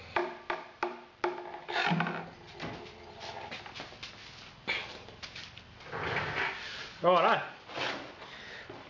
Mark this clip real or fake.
real